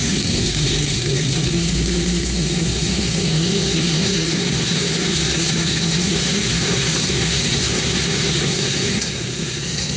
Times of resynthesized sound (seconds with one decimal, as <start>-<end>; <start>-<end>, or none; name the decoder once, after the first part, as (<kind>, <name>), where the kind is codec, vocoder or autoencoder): 0.0-10.0 (codec, SNAC)